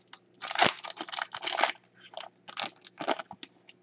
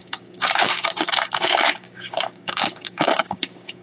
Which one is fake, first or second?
second